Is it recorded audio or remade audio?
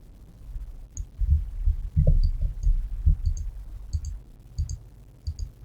recorded